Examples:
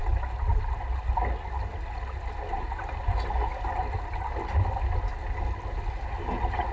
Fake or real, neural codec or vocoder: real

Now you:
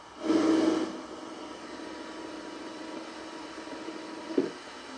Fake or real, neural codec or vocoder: real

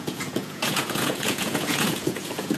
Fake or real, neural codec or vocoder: fake, vocoder, Vocos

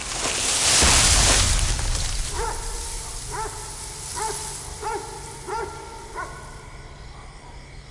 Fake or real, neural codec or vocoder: real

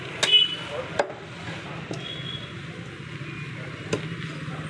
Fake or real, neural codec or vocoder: real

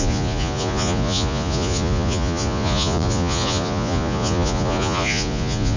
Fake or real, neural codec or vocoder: fake, vocoder, Vocos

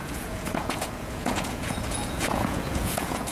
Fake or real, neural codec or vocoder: fake, vocoder, Vocos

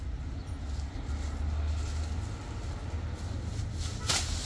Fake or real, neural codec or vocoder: real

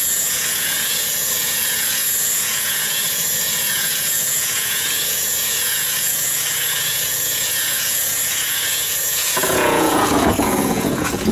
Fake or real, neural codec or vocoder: fake, vocoder, Vocos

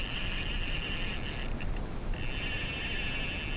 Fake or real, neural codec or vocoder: real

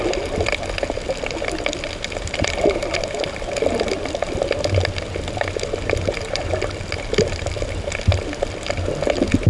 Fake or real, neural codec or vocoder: real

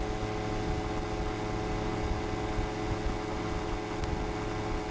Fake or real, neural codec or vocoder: real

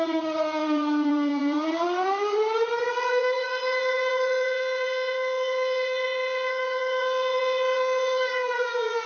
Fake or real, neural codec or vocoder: fake, vocoder, Vocos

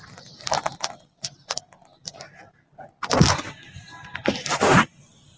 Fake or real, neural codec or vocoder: real